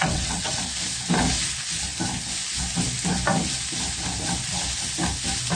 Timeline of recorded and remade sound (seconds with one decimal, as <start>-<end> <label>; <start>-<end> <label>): 0.0-0.6 remade; 0.6-5.5 recorded